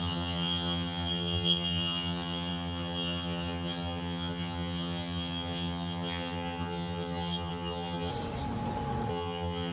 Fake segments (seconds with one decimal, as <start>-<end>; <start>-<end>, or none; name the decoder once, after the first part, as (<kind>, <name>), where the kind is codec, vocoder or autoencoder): 0.0-8.1 (vocoder, HiFi-GAN); 9.1-9.7